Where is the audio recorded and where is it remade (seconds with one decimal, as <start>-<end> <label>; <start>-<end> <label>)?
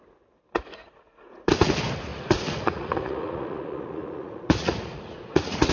0.0-0.8 recorded; 0.8-1.7 remade; 1.7-2.1 recorded; 2.1-5.7 remade